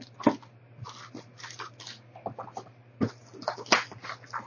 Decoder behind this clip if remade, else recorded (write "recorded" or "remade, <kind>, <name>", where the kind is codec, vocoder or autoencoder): recorded